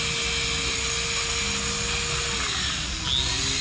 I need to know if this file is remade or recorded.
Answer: recorded